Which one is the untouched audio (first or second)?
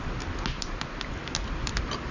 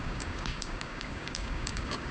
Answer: first